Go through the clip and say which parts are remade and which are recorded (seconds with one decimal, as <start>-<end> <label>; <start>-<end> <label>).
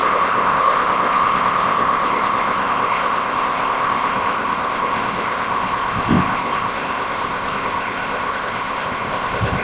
0.0-9.6 remade